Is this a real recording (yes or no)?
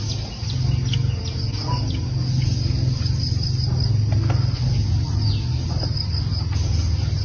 yes